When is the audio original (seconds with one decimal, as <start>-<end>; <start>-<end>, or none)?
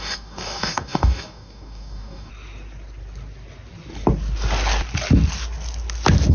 2.3-6.3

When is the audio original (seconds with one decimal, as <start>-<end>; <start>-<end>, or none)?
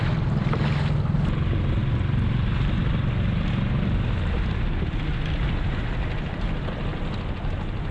0.0-7.9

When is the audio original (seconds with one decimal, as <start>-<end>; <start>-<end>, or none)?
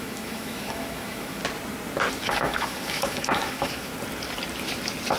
1.4-2.3; 3.9-5.2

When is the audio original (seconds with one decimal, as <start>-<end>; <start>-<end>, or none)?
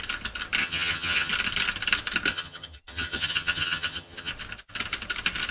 0.0-0.6; 1.3-2.3; 4.3-5.5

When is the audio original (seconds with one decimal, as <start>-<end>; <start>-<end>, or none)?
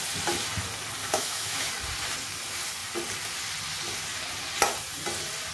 0.0-1.0; 1.7-5.5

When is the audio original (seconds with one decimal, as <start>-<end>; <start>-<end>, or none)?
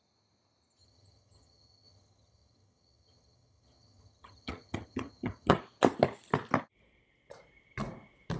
0.0-0.8; 5.6-8.4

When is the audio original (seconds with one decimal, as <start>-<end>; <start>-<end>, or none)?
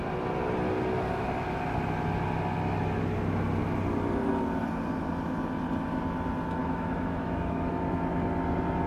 0.0-6.6; 7.7-8.9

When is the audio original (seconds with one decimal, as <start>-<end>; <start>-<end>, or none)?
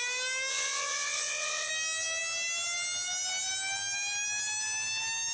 0.0-0.5; 1.7-5.3